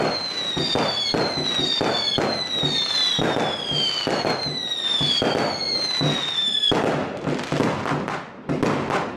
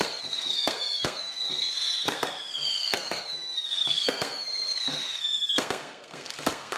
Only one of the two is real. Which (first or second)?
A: first